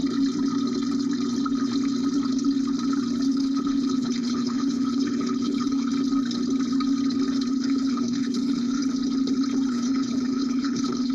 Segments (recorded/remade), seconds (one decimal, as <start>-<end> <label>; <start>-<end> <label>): 0.0-3.3 recorded; 3.3-5.9 remade; 5.9-7.5 recorded; 7.5-8.8 remade; 8.8-9.7 recorded; 9.7-11.1 remade

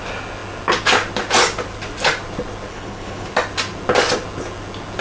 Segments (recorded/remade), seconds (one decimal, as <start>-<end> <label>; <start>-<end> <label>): 0.0-2.7 recorded; 2.7-3.3 remade; 3.3-5.0 recorded

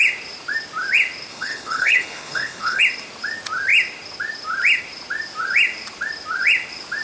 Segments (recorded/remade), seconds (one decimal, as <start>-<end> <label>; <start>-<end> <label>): 0.0-1.3 recorded; 1.3-2.8 remade; 2.8-7.0 recorded

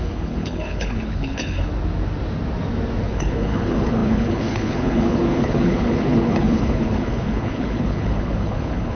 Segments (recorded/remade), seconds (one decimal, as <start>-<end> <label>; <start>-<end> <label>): 0.0-1.7 remade; 1.7-3.0 recorded; 3.0-8.9 remade

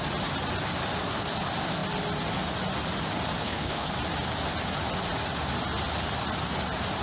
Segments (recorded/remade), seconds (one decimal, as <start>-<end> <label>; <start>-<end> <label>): 0.0-3.4 recorded; 3.4-3.9 remade; 3.9-7.0 recorded

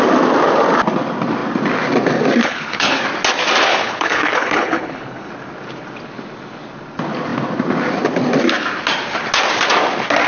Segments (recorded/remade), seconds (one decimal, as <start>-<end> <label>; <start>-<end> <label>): 0.0-2.4 recorded; 2.4-3.0 remade; 3.0-3.7 recorded; 3.7-5.3 remade; 5.3-10.3 recorded

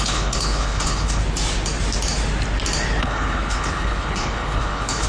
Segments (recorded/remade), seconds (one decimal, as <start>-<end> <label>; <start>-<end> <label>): 0.0-1.2 remade; 1.2-3.0 recorded; 3.0-5.1 remade

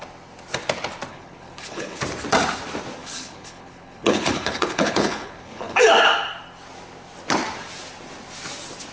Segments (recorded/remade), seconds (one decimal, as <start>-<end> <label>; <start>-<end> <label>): 0.0-1.1 recorded; 1.1-2.0 remade; 2.0-3.0 recorded; 3.0-5.8 remade; 5.8-8.9 recorded